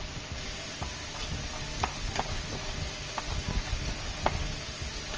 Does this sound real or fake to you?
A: real